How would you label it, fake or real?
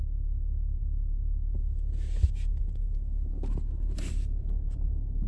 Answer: fake